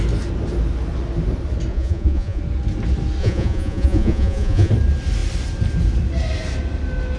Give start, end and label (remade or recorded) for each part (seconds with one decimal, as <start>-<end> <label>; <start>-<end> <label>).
0.0-1.7 recorded; 1.7-2.4 remade; 2.4-3.2 recorded; 3.2-4.7 remade; 4.7-7.2 recorded